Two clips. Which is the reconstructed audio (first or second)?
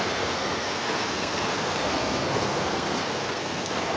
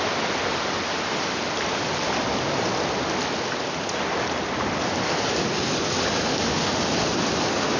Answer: first